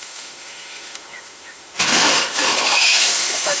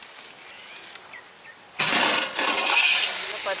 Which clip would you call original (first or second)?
second